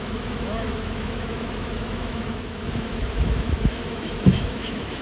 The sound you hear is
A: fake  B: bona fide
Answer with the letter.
A